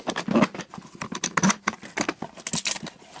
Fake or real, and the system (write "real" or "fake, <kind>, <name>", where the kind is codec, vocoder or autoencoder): real